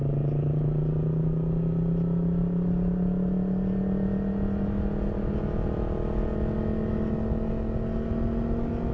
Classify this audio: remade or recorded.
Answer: recorded